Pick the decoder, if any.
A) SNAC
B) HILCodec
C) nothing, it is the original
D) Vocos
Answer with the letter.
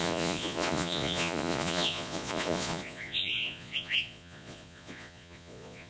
D